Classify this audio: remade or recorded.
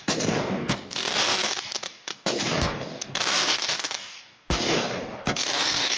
remade